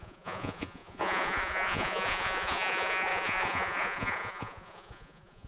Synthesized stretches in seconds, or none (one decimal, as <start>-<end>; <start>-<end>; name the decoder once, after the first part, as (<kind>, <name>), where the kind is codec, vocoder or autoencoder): 0.0-5.5 (vocoder, Vocos)